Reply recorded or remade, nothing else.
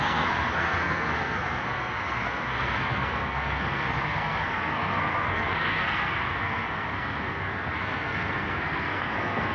remade